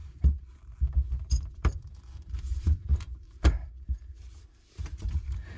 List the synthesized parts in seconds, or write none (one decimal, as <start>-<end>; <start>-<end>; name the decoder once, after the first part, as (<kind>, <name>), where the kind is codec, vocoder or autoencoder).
0.0-4.2 (vocoder, BigVGAN v2); 5.1-5.6